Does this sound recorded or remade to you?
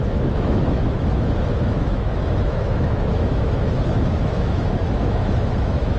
remade